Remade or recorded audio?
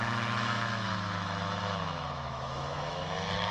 remade